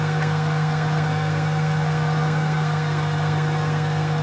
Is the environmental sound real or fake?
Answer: fake